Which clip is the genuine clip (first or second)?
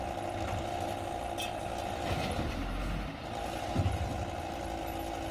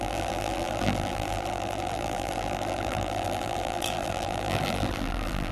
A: first